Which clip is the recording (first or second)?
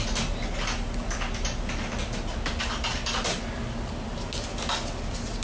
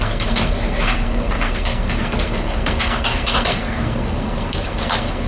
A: first